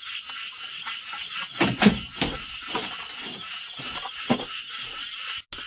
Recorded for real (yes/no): yes